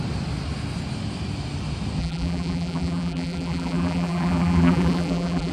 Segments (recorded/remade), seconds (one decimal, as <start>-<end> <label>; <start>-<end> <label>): 0.0-2.0 recorded; 2.0-5.5 remade